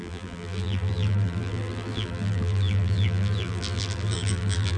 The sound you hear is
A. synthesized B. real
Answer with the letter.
A